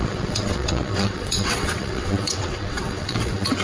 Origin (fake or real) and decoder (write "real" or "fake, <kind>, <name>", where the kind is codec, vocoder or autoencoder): fake, vocoder, WaveNeXt